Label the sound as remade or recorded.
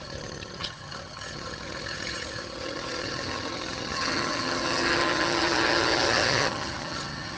remade